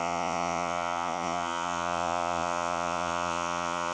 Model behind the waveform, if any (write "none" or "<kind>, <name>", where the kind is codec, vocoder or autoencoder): vocoder, Vocos